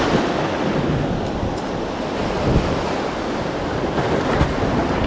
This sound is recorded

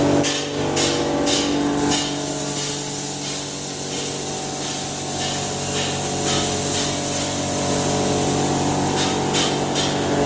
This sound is recorded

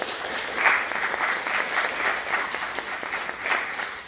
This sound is recorded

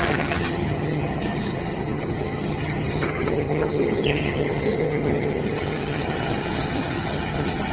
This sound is remade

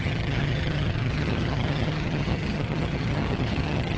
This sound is remade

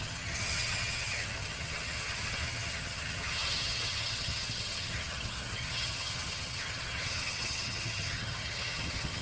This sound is remade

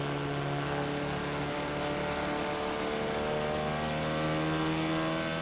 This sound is recorded